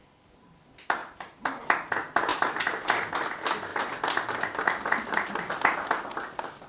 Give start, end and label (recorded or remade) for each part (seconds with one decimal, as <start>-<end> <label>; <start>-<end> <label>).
0.0-1.0 recorded; 1.0-1.9 remade; 1.9-2.3 recorded; 2.3-3.1 remade; 3.1-3.7 recorded; 3.7-5.3 remade; 5.3-6.7 recorded